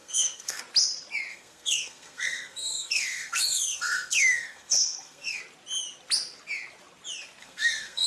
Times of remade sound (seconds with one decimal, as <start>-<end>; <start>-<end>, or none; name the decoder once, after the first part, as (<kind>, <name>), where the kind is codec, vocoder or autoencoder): 0.0-0.6 (codec, SNAC); 1.3-5.4; 7.4-8.1